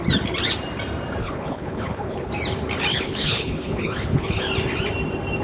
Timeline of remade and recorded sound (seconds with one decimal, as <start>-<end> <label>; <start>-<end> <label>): 0.0-1.2 recorded; 1.2-2.3 remade; 2.3-2.9 recorded; 2.9-4.4 remade; 4.4-5.4 recorded